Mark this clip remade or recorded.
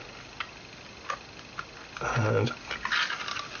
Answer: recorded